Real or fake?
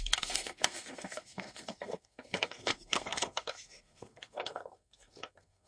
fake